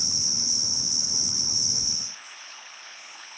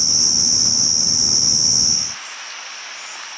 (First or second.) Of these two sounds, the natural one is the second